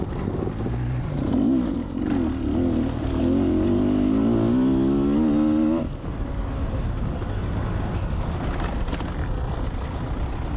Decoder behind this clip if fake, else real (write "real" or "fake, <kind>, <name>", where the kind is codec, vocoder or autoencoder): real